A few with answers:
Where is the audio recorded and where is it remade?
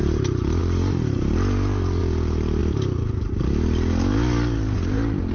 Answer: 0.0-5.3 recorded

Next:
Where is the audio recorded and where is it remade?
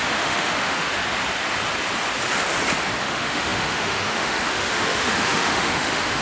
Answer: 0.0-1.0 remade; 1.0-3.0 recorded; 3.0-6.2 remade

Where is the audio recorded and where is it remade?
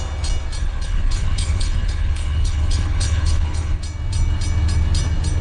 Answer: 0.0-0.6 recorded; 0.6-3.8 remade; 3.8-5.4 recorded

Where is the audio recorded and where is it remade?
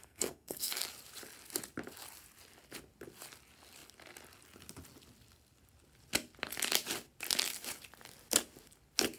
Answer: 0.0-0.8 remade; 0.8-9.2 recorded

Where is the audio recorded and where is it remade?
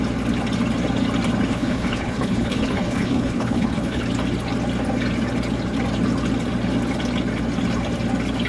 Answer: 0.0-1.5 recorded; 1.5-4.0 remade; 4.0-8.5 recorded